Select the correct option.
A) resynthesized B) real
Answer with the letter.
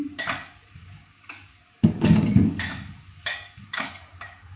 A